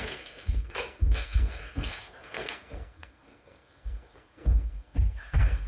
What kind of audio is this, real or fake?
fake